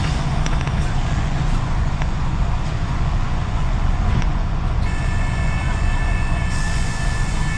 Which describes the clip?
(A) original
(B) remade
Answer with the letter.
B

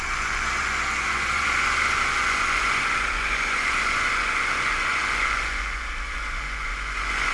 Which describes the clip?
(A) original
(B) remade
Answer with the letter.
B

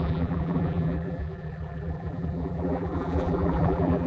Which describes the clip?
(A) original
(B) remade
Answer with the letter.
B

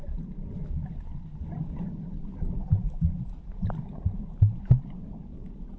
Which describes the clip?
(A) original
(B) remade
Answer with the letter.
A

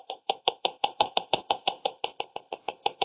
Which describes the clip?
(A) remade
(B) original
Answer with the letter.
A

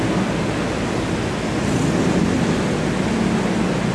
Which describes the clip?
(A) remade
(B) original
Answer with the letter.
B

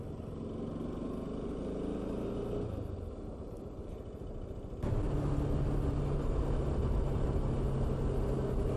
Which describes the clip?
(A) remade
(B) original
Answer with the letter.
B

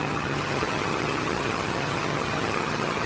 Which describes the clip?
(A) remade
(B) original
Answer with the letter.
A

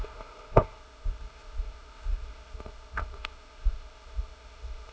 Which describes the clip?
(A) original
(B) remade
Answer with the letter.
B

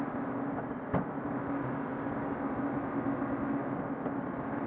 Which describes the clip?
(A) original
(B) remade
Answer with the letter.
A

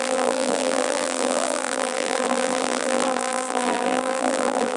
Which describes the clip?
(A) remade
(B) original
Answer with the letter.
A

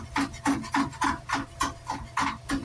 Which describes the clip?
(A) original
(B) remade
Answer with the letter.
A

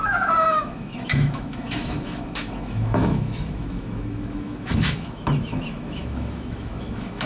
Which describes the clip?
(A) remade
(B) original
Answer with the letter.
A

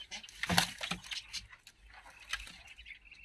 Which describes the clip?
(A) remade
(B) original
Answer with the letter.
B